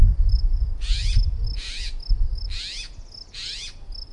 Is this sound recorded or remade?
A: recorded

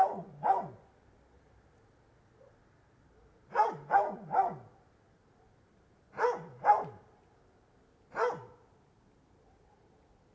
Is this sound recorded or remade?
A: recorded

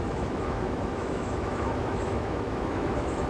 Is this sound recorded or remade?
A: remade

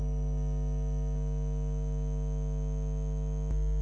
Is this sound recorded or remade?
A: recorded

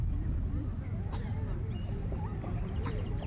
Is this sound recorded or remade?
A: remade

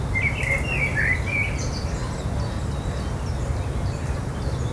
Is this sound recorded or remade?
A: recorded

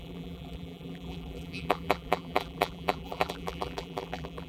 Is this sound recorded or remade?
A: remade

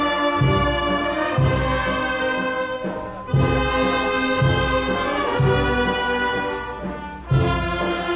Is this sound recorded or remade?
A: recorded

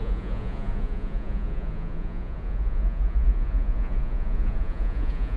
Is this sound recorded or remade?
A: remade